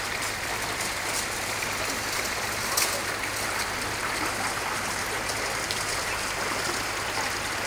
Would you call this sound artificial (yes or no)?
no